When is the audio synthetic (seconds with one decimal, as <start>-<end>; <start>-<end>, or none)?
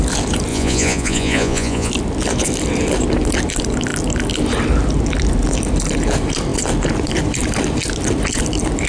0.5-1.9